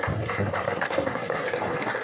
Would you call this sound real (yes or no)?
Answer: no